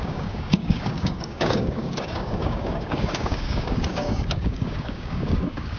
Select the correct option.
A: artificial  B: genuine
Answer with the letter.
A